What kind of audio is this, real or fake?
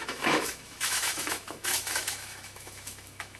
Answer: fake